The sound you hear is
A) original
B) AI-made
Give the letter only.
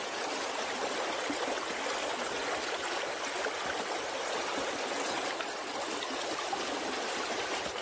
A